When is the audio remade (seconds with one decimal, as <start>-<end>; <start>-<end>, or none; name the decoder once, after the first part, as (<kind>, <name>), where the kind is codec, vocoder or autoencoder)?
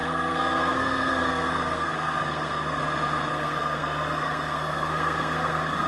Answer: 0.0-2.8 (codec, SNAC); 3.3-5.9